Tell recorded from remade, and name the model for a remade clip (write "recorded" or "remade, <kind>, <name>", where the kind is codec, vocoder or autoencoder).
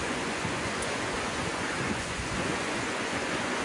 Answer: remade, vocoder, Vocos